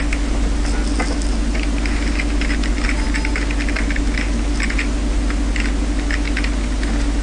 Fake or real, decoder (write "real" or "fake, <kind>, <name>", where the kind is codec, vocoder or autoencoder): real